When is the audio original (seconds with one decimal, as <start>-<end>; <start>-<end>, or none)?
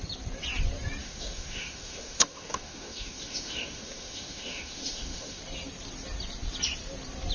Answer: 0.0-1.0; 5.4-7.3